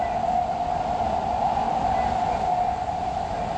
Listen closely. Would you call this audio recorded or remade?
recorded